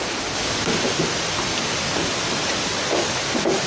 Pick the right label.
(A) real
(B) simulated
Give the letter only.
A